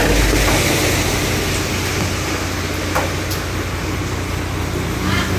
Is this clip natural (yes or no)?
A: yes